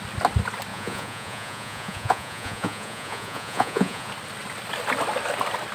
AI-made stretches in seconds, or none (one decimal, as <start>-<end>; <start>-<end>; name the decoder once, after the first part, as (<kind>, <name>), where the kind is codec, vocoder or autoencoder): 0.7-4.1 (vocoder, Vocos)